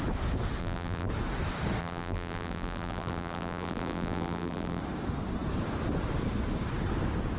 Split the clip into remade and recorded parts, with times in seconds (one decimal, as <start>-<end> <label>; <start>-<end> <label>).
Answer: 0.0-0.6 recorded; 0.6-1.1 remade; 1.1-1.8 recorded; 1.8-4.8 remade; 4.8-7.4 recorded